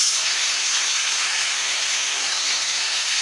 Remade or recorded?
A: remade